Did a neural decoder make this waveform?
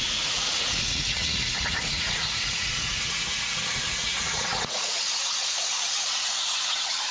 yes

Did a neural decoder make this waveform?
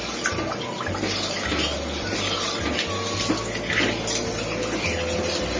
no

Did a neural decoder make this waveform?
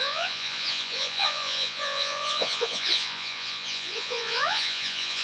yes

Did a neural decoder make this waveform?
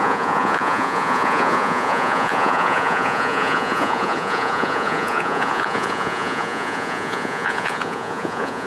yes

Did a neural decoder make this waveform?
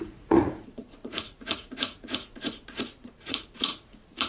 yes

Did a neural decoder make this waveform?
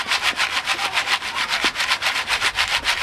no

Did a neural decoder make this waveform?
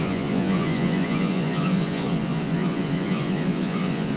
yes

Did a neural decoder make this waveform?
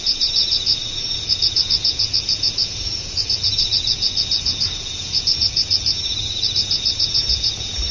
yes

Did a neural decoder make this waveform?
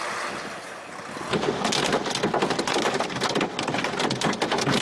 no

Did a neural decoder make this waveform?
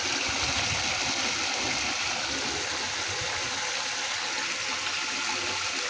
no